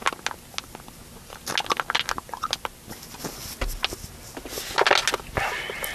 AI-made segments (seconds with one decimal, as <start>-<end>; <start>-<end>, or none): none